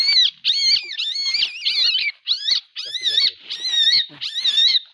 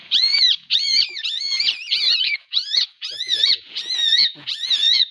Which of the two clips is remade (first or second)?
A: second